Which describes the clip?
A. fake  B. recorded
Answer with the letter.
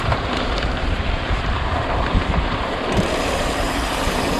A